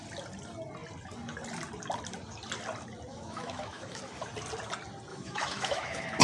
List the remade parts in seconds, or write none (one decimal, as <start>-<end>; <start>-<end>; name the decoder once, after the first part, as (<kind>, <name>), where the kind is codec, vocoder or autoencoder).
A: 3.1-4.0 (autoencoder, DAC-VAE); 5.1-6.2